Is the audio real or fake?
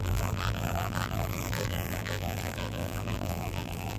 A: fake